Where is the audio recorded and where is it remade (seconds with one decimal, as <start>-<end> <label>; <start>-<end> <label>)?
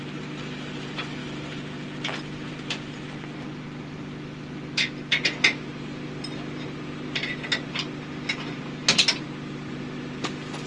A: 0.0-10.7 recorded